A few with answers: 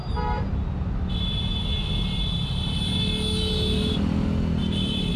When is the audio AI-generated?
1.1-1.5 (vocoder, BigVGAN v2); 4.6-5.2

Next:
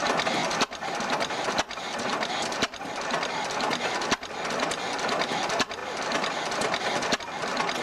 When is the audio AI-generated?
5.8-7.2 (vocoder, BigVGAN v2)

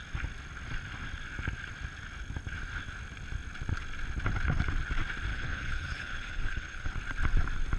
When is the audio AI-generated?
5.3-6.9 (codec, HILCodec)